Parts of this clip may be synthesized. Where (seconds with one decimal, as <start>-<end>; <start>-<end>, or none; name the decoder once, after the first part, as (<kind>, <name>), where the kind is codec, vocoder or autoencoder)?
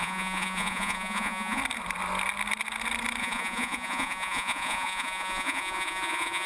0.0-1.6 (vocoder, Vocos); 3.2-6.5